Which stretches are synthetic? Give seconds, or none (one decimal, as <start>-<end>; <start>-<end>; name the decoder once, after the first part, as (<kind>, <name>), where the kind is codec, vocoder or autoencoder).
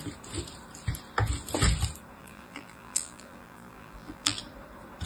2.2-4.4 (vocoder, BigVGAN v2)